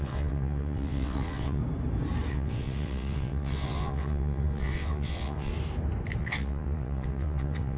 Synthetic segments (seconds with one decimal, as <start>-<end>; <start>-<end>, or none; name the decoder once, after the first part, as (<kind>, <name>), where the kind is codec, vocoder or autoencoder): 0.0-1.6 (vocoder, WaveNeXt); 2.3-5.5; 6.2-7.8